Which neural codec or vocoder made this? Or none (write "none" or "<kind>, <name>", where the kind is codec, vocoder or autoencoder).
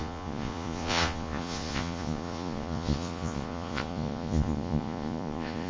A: vocoder, Vocos